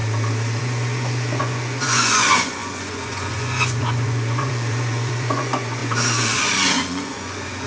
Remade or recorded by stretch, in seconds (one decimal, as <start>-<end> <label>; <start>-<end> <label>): 0.0-0.6 recorded; 0.6-7.7 remade